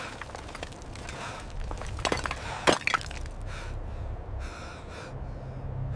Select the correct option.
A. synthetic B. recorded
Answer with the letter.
B